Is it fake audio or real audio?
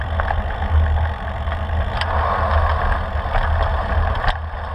real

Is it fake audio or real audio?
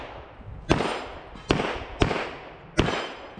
real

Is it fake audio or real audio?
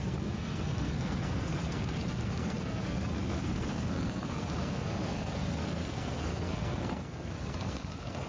fake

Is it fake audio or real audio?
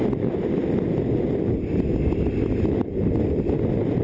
real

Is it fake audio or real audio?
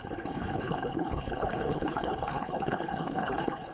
fake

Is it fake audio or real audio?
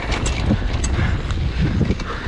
real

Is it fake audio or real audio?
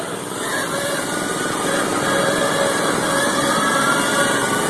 real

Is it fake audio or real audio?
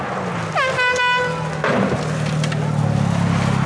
real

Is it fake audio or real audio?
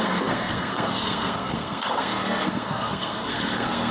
fake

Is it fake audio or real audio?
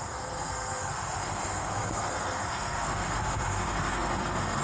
fake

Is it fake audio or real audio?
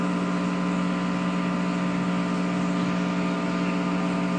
real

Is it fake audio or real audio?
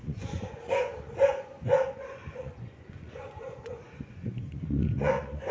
fake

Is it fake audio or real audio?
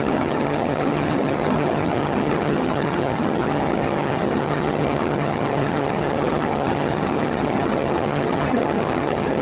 fake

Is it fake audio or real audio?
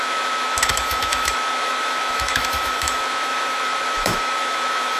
fake